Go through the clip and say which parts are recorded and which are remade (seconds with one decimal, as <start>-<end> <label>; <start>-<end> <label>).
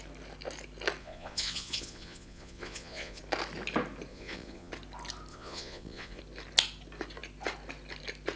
0.0-1.0 recorded; 1.0-3.2 remade; 3.2-4.1 recorded; 4.1-4.7 remade; 4.7-5.3 recorded; 5.3-6.2 remade; 6.2-8.4 recorded